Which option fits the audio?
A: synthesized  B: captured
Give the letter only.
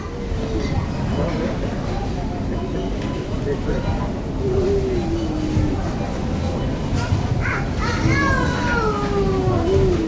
B